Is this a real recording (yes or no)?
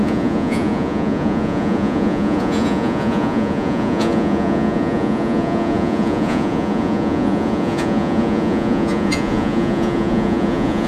no